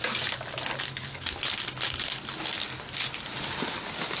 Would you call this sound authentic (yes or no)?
yes